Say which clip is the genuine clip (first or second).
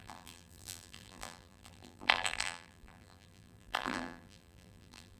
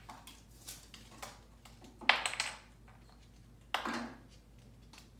second